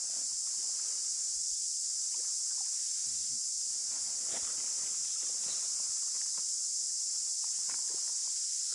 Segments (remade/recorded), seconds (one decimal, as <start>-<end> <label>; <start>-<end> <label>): 0.0-8.7 recorded